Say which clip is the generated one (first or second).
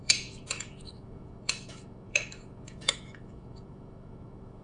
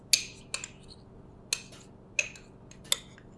first